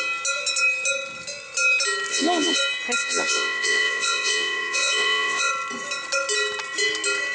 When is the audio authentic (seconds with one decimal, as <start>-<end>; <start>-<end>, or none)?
0.0-2.1; 2.6-3.0; 5.5-7.3